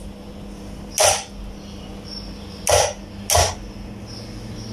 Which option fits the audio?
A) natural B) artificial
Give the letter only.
A